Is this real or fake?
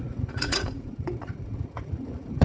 fake